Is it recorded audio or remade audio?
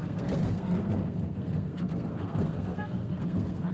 remade